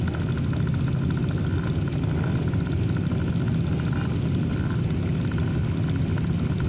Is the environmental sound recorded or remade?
recorded